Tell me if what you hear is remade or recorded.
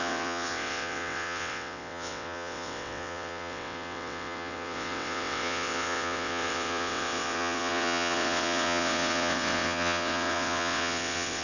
remade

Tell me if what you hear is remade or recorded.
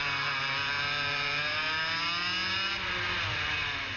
recorded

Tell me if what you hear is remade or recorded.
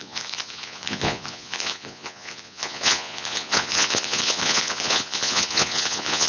remade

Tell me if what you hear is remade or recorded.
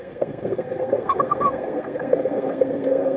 remade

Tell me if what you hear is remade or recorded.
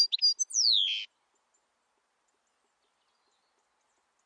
recorded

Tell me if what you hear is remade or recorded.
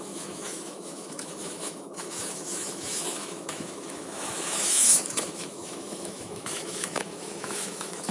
remade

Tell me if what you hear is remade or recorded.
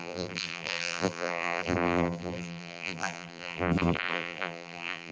remade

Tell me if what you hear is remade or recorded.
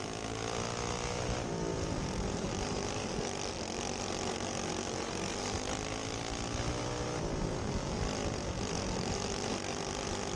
recorded